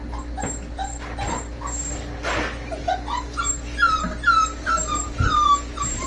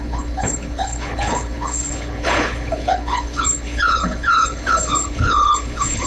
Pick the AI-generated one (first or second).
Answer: second